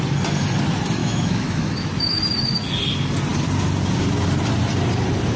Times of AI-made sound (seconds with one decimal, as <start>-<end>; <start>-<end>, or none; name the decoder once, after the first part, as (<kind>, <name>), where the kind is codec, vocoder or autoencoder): 1.0-2.2 (autoencoder, DAC-VAE)